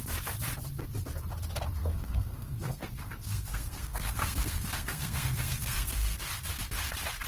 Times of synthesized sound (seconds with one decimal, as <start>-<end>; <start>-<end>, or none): 1.8-6.2